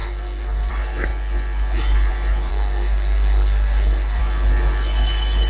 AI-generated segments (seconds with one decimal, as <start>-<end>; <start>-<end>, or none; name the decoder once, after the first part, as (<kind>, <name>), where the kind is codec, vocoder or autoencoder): 0.0-0.7 (codec, SNAC); 2.5-4.2